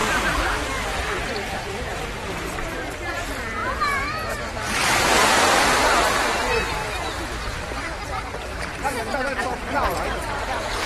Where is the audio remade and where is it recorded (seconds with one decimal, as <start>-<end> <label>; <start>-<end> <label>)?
0.0-1.0 recorded; 1.0-10.9 remade